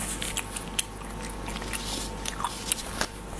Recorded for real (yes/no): yes